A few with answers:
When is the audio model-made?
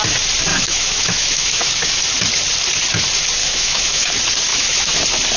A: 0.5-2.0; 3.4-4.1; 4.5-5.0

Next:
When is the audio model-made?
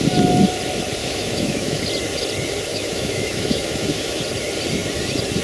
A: 1.0-1.8; 2.7-4.2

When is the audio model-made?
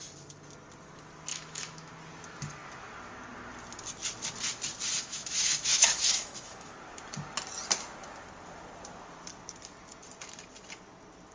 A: 1.3-1.9; 4.9-6.7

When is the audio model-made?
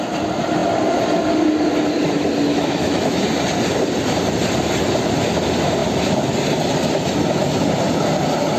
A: 2.5-3.2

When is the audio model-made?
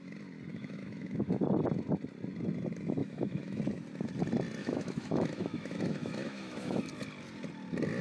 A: 0.5-1.4; 3.0-3.6; 4.6-6.8